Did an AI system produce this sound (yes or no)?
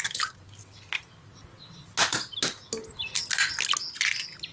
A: no